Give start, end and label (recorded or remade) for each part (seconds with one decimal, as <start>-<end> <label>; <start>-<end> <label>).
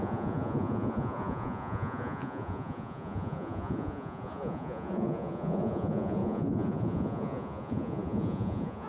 0.0-8.9 remade